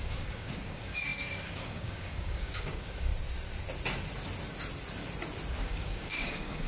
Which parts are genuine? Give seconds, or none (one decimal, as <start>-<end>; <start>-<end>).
3.1-5.5